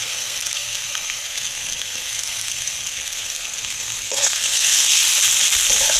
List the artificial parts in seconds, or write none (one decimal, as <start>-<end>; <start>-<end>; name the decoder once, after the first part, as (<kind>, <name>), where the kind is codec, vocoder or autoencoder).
0.0-5.0 (codec, SNAC)

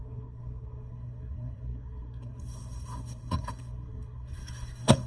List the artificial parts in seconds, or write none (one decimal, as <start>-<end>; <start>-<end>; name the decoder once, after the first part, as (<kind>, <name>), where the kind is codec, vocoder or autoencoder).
0.0-5.1 (codec, SNAC)

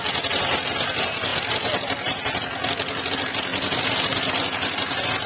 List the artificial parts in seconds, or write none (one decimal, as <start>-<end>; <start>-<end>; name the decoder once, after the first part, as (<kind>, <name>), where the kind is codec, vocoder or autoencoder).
none

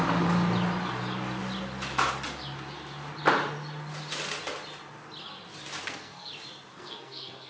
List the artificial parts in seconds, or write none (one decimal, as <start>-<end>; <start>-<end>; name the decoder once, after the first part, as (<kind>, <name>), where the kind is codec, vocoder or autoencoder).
5.8-6.3 (codec, SNAC); 6.7-7.5

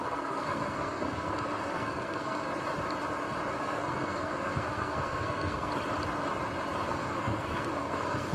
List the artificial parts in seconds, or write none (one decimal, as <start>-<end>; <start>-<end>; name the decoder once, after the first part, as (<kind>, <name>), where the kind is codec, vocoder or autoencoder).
0.0-2.5 (codec, SNAC); 3.5-5.7; 6.8-8.3

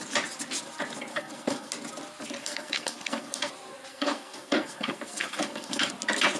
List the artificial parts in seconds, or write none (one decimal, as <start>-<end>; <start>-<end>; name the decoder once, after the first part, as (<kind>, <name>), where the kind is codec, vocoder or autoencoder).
1.1-1.7 (codec, SNAC); 2.4-3.5; 3.9-5.9